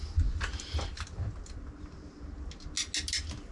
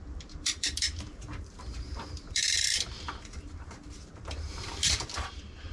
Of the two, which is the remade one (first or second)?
second